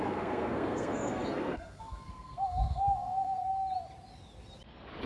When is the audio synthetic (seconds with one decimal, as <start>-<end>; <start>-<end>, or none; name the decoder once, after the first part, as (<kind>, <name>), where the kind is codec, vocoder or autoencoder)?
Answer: 0.0-3.4 (codec, SNAC)